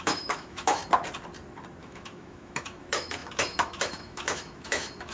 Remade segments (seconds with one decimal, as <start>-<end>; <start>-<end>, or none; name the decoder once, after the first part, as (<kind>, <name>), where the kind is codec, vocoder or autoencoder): 0.0-0.8 (autoencoder, DAC-VAE); 1.8-5.1